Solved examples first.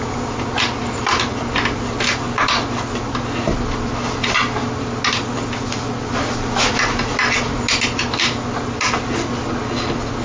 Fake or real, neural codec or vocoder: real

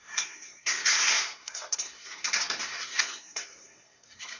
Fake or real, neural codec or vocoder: fake, codec, SNAC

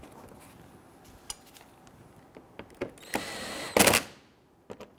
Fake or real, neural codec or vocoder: real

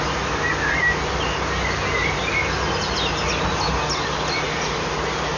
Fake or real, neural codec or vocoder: real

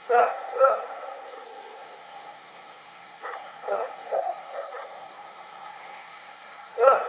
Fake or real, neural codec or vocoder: fake, codec, SNAC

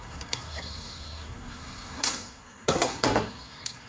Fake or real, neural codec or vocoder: fake, codec, SNAC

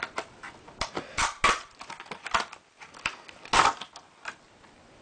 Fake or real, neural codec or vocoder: real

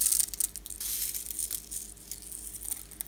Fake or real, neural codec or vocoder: real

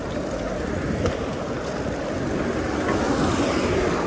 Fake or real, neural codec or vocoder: real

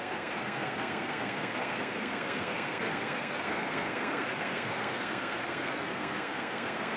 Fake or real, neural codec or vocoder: fake, codec, SNAC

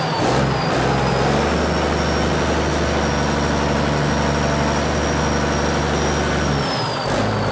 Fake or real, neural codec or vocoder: real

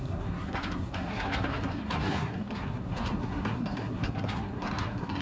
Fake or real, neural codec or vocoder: fake, codec, SNAC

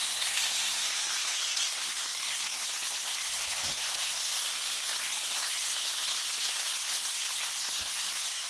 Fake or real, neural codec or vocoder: fake, codec, SNAC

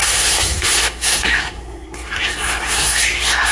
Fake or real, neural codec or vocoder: fake, codec, SNAC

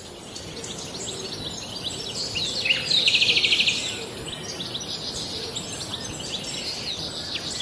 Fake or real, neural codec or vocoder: real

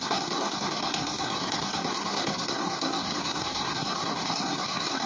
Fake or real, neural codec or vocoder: fake, codec, SNAC